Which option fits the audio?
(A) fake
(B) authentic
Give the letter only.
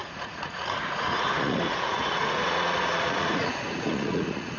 A